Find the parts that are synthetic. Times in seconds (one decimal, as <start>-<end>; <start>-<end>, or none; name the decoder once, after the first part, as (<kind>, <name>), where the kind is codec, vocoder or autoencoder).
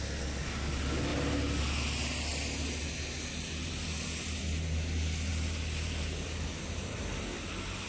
none